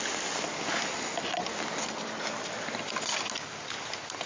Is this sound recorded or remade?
recorded